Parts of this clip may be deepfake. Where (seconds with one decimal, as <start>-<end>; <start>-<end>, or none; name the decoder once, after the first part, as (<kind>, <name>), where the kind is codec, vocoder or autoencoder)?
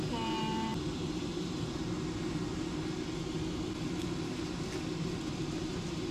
none